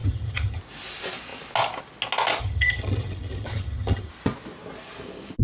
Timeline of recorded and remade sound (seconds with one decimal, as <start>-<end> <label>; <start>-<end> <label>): 0.0-0.6 remade; 0.6-2.4 recorded; 2.4-4.1 remade; 4.1-5.4 recorded